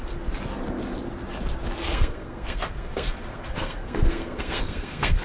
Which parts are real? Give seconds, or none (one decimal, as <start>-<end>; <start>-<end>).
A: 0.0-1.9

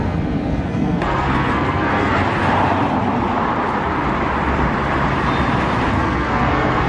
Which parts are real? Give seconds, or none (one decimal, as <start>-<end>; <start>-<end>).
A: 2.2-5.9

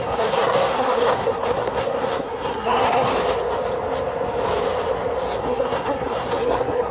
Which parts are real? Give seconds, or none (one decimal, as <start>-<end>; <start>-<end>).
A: 3.1-5.3

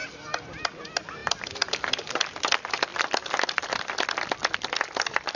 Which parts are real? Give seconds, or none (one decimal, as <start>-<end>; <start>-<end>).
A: 0.0-2.9; 3.8-4.4; 4.9-5.4